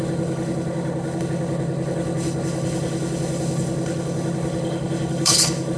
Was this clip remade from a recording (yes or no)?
yes